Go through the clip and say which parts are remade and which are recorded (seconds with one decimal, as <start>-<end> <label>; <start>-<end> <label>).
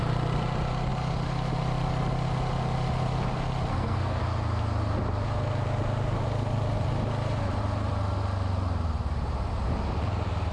0.0-3.7 recorded; 3.7-4.2 remade; 4.2-10.5 recorded